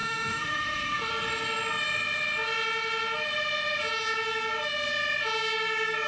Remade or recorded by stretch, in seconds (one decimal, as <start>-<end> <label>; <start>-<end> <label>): 0.0-1.1 remade; 1.1-6.1 recorded